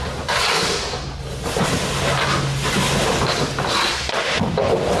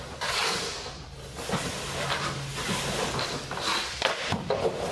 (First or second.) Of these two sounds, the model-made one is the second